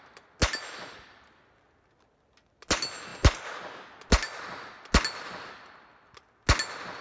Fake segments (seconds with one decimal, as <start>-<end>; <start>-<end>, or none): none